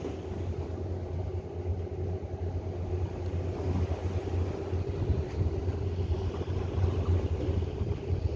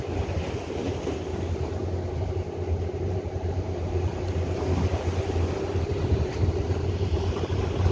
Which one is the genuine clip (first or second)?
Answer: first